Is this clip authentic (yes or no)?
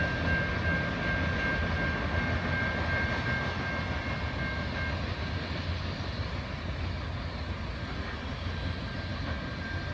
yes